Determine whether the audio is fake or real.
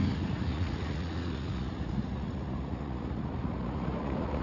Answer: fake